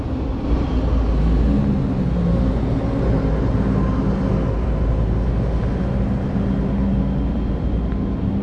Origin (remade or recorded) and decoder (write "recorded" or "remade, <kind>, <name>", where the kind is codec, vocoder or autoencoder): recorded